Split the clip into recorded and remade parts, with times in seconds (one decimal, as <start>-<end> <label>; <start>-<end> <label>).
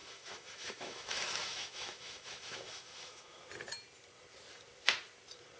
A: 0.0-3.4 remade; 3.4-5.6 recorded